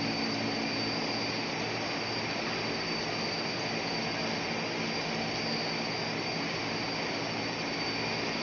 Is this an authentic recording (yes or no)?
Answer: no